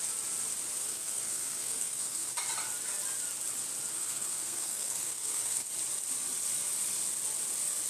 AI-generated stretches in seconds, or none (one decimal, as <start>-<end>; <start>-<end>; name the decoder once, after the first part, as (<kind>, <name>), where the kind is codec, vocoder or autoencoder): 0.8-2.3 (codec, SNAC); 3.9-5.7